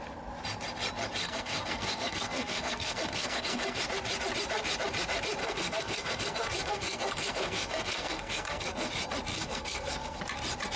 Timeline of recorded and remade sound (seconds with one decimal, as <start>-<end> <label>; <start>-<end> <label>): 0.0-1.2 recorded; 1.2-3.8 remade; 3.8-5.4 recorded; 5.4-8.9 remade; 8.9-9.3 recorded; 9.3-10.2 remade; 10.2-10.8 recorded